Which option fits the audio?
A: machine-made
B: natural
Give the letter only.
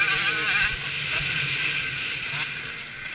B